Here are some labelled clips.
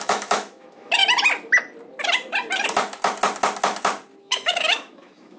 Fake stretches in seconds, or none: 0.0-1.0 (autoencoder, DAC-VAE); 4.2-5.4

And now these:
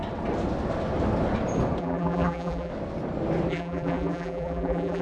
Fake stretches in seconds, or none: 1.8-2.7 (vocoder, BigVGAN v2); 3.5-5.0

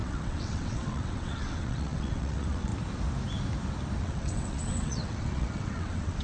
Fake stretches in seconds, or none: 0.0-2.7 (vocoder, WaveNeXt); 4.0-6.2

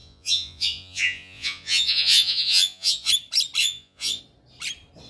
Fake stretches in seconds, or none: 0.0-3.1 (vocoder, Vocos); 3.6-4.2

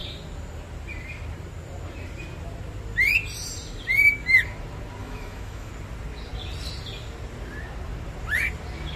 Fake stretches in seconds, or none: 5.0-5.7 (autoencoder, DAC-VAE)